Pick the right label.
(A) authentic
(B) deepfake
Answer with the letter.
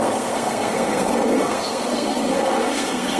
B